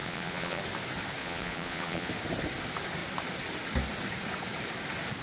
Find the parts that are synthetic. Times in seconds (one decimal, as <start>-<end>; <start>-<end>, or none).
0.0-0.6; 1.2-2.1